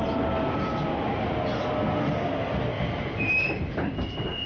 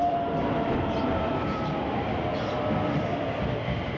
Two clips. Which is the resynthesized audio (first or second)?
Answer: second